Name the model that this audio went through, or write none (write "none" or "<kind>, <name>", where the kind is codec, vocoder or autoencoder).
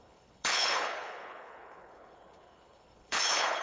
codec, HILCodec